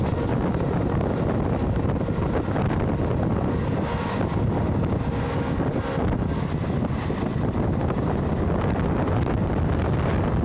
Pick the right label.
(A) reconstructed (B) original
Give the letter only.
B